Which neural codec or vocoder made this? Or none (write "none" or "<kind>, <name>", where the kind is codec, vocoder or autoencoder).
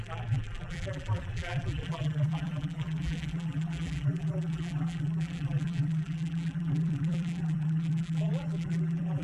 vocoder, BigVGAN v2